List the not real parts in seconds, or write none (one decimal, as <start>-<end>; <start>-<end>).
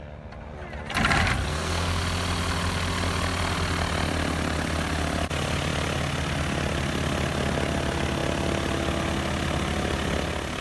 1.5-2.0